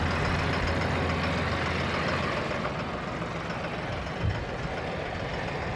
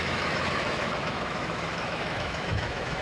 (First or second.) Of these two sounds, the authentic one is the first